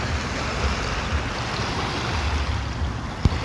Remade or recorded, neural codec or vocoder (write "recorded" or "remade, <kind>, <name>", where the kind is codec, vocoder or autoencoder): recorded